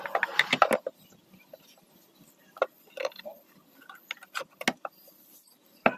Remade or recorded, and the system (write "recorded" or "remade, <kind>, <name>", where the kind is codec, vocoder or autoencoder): recorded